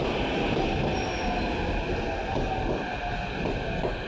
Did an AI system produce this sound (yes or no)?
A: no